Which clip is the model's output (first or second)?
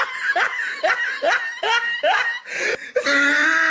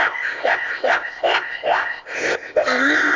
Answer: second